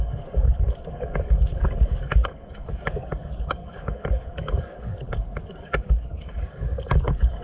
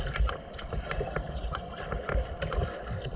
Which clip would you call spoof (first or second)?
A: first